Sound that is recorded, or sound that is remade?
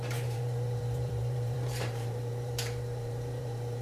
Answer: remade